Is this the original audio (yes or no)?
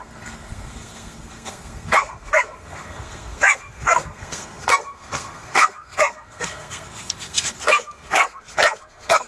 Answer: no